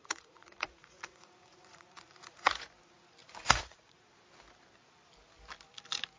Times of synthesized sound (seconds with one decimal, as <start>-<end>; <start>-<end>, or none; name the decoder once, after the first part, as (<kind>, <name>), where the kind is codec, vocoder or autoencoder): 0.0-2.7 (vocoder, Vocos); 3.2-4.0